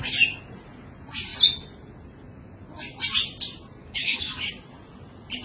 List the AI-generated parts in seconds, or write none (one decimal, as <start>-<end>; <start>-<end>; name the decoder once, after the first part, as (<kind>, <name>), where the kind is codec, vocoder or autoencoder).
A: 3.8-4.5 (codec, DAC)